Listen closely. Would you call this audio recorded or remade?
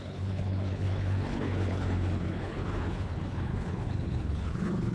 remade